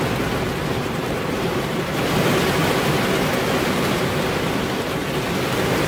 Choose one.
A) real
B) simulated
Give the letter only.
A